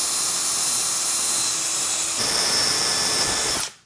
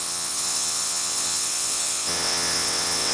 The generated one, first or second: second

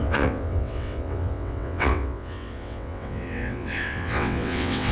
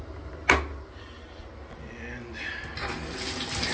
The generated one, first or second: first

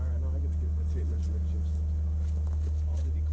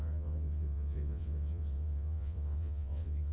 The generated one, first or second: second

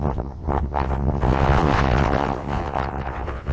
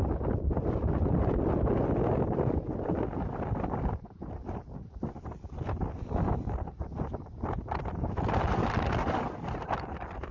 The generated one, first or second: first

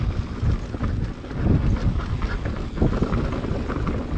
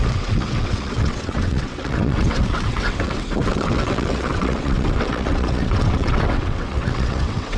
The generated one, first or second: second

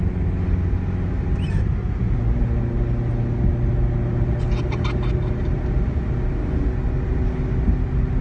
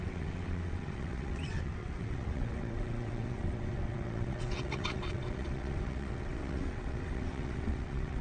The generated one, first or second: second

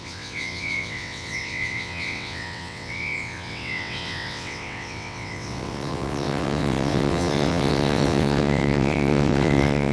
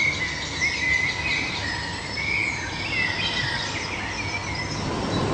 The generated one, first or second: first